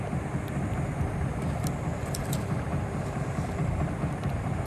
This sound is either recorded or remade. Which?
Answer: recorded